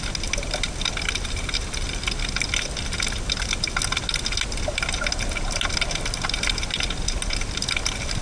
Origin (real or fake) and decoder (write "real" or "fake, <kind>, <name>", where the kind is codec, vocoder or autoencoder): real